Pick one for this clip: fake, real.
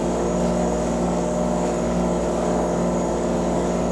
fake